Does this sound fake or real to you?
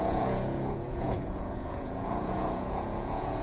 fake